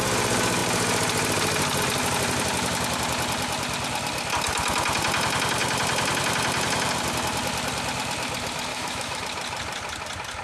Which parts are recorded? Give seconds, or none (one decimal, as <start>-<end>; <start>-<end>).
0.0-8.7; 9.2-10.4